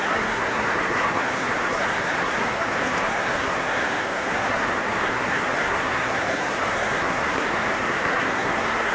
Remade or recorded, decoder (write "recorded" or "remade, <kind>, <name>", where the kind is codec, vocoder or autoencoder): remade, codec, SNAC